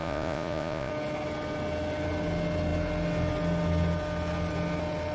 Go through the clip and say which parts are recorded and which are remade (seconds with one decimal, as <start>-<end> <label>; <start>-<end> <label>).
0.0-0.9 remade; 0.9-5.1 recorded